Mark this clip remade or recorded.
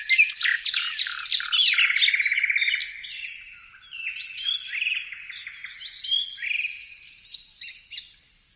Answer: recorded